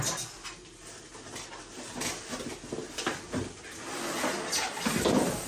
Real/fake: real